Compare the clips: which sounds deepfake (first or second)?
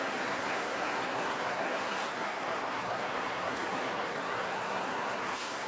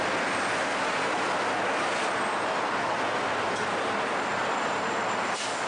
first